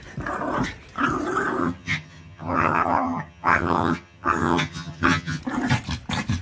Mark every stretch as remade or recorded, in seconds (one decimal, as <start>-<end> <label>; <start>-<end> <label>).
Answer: 0.0-1.6 recorded; 1.6-5.4 remade; 5.4-6.4 recorded